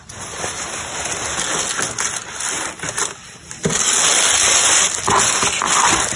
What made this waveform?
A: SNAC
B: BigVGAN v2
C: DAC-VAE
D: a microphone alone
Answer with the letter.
D